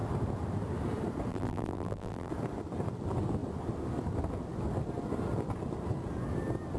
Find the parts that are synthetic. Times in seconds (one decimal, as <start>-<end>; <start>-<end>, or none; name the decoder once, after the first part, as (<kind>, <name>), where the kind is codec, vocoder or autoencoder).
1.3-2.3 (vocoder, BigVGAN v2)